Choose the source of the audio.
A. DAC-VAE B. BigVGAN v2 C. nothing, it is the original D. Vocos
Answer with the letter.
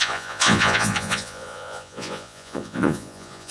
D